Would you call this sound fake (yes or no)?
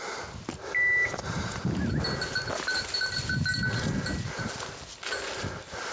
no